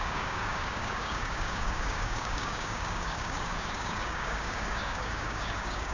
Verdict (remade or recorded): remade